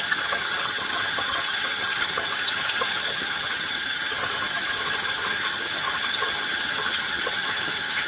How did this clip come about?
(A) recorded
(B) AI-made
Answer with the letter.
B